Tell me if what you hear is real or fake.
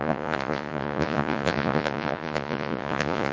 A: fake